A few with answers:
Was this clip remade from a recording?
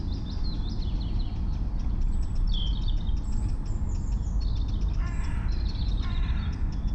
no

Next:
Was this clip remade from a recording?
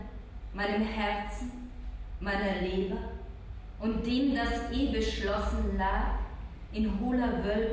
no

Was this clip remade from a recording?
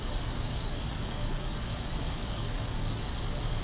yes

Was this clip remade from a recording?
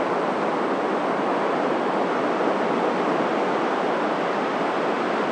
no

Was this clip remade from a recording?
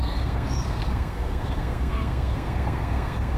yes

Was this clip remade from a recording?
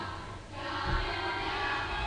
yes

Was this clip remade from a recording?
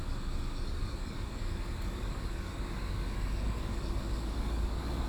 yes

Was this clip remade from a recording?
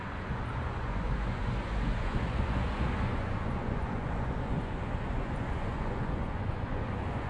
yes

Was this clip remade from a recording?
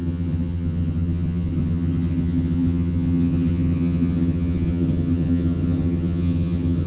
yes